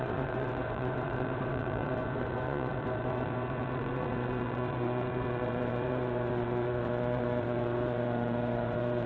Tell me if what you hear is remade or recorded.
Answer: remade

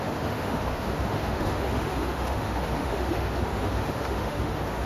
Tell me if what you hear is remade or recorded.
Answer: remade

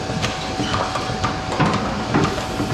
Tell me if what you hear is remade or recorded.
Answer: recorded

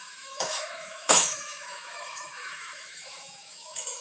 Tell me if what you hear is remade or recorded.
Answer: remade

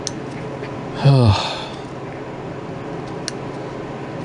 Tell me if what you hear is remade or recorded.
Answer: recorded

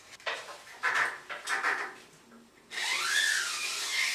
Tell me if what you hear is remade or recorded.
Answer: recorded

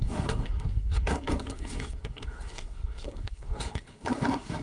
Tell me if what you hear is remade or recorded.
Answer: remade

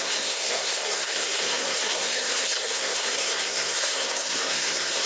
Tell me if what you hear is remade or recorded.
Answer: remade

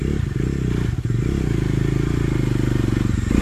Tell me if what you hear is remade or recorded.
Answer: recorded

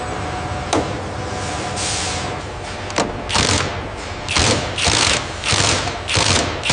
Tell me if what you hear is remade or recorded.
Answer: recorded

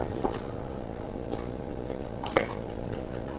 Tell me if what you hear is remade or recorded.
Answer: remade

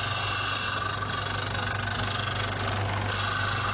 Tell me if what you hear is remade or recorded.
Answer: recorded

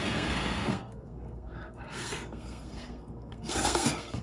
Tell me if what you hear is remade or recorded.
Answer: remade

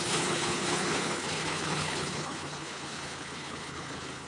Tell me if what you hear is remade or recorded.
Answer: remade